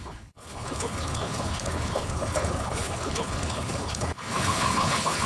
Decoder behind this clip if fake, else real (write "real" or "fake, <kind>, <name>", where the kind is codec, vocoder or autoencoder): fake, codec, HILCodec